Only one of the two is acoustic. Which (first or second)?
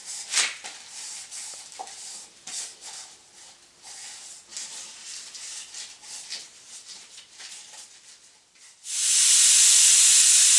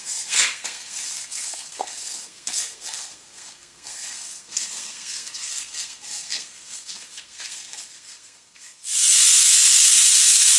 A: first